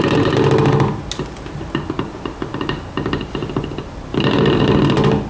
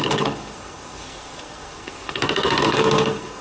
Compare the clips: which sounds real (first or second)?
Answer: first